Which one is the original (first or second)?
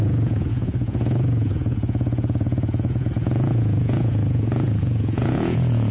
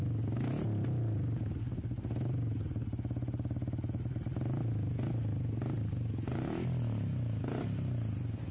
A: second